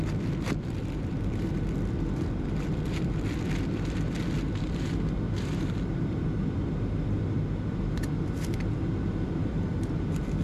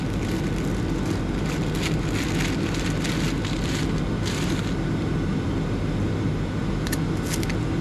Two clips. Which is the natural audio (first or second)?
second